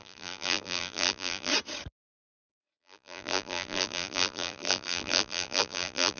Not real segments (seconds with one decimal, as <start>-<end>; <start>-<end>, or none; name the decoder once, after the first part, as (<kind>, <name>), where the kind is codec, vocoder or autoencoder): 0.0-1.5 (vocoder, BigVGAN v2); 2.8-6.2